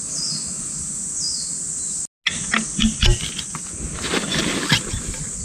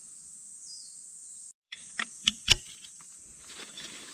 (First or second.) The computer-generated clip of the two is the second